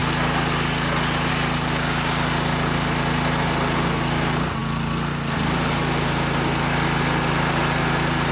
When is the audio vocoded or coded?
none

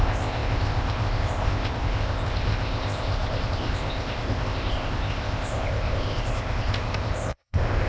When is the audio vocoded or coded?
0.0-7.9 (codec, ZipCodec)

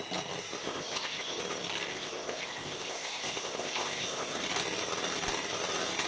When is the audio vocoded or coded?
0.6-1.4 (codec, ZipCodec); 1.9-4.4

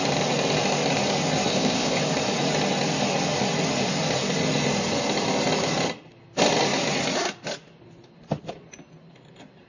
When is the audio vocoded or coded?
1.5-2.0 (codec, ZipCodec)

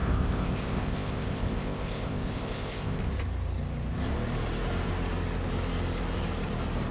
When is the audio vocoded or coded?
0.0-3.1 (codec, ZipCodec)

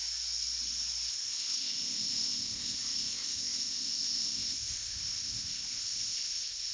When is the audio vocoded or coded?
1.1-6.7 (codec, ZipCodec)

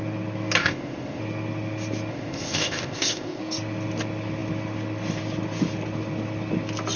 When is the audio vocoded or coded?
0.6-1.2 (codec, ZipCodec); 2.1-3.4

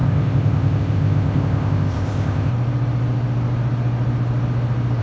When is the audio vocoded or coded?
0.0-2.5 (codec, ZipCodec)